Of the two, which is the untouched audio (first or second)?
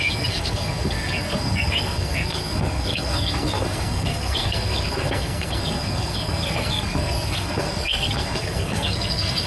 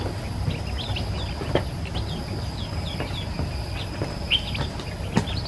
second